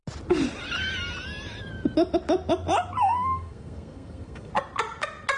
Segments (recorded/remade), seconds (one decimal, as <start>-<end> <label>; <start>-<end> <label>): 0.0-3.0 recorded; 3.0-4.5 remade; 4.5-5.4 recorded